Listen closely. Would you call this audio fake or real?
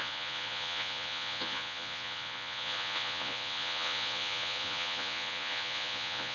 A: fake